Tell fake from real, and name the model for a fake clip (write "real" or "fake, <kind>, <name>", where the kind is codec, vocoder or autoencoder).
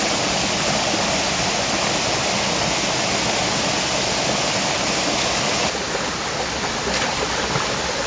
real